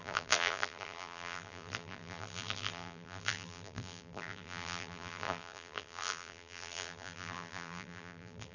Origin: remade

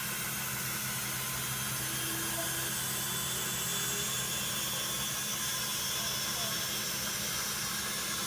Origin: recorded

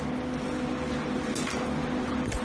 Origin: recorded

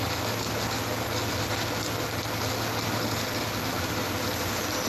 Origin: recorded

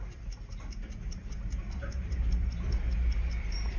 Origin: remade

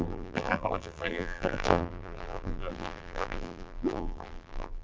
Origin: remade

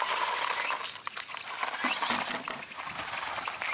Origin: recorded